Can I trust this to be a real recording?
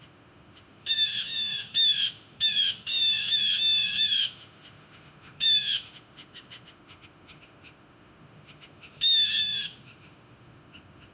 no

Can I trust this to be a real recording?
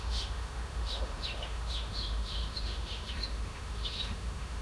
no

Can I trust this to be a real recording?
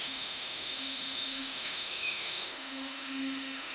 no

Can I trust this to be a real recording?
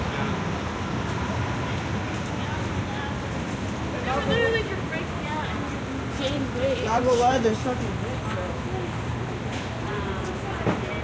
yes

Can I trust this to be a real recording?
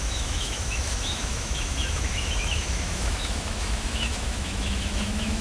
no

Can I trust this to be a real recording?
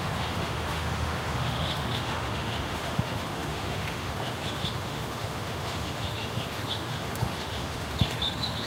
no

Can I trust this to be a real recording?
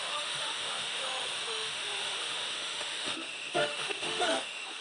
no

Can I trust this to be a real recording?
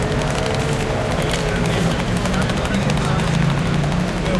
yes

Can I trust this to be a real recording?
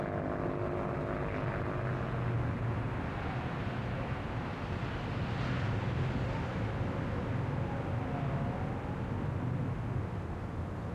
yes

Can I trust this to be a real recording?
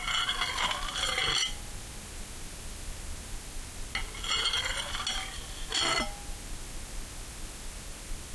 yes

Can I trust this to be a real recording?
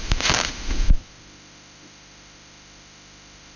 no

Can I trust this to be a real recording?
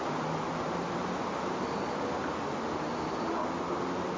yes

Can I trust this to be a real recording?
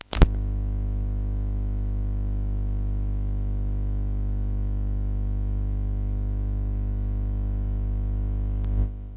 no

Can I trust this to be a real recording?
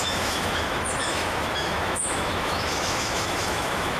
no